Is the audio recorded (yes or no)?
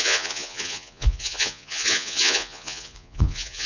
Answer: no